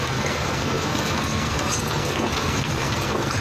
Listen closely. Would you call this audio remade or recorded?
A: remade